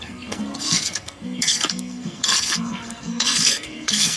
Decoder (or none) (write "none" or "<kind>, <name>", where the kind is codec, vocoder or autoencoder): codec, SNAC